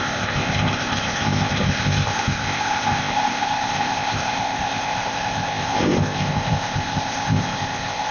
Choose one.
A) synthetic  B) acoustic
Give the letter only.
A